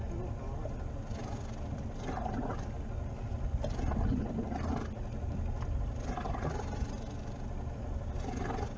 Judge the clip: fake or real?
real